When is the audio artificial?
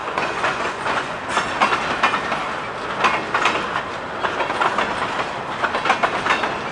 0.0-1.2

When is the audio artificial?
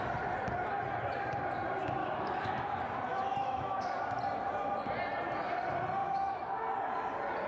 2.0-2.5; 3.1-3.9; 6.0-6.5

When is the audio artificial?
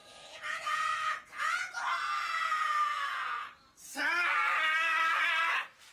0.0-3.5